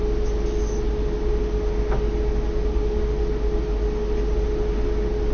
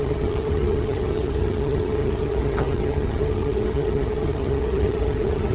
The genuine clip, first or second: first